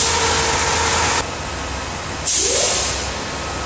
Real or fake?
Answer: real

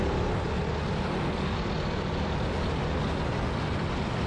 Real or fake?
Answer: real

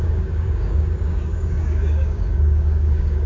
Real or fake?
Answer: fake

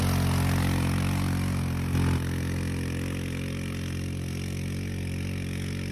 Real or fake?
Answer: real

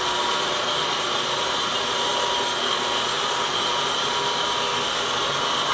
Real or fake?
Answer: real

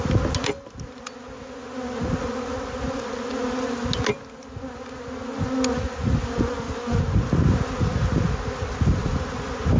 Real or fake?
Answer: real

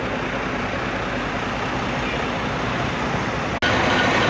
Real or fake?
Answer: real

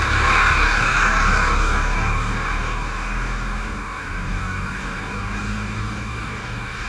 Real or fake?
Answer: fake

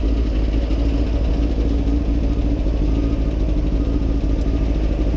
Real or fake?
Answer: real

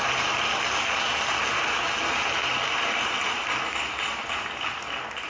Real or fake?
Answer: real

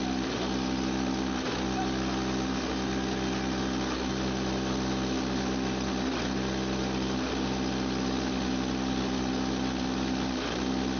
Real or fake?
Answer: real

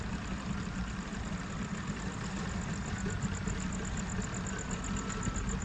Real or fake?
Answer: real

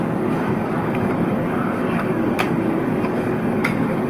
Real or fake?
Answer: fake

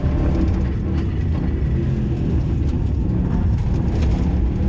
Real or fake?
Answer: real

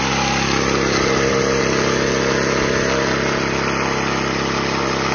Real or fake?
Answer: real